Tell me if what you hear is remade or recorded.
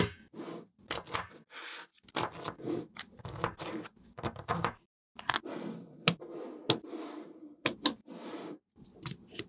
recorded